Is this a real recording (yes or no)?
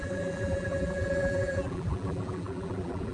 no